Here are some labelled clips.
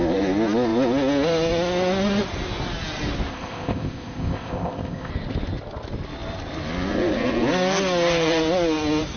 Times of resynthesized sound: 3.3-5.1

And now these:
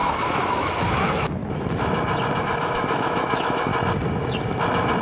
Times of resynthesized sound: 0.0-1.4; 2.4-3.7

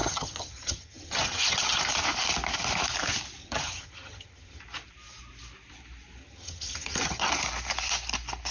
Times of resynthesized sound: 0.0-1.8; 3.4-4.6; 6.2-7.3

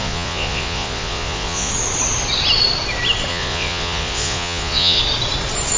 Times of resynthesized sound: 0.0-1.7; 3.3-5.0

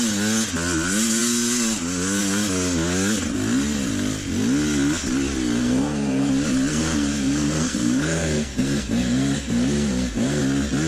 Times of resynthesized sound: 5.6-6.3; 6.7-10.4

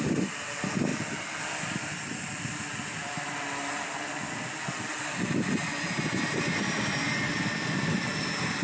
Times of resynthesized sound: none